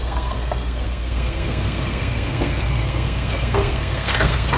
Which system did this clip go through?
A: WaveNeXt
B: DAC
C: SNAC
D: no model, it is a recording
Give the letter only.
C